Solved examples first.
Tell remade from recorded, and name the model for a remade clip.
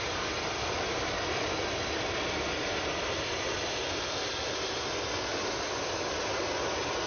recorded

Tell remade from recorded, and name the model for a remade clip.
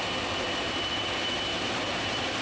remade, vocoder, BigVGAN v2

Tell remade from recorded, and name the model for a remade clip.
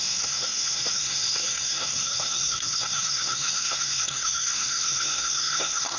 remade, codec, SNAC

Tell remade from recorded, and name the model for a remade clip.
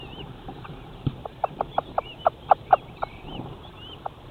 remade, vocoder, BigVGAN v2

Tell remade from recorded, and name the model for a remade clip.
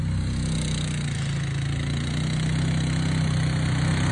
recorded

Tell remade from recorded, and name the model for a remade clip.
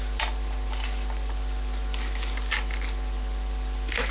recorded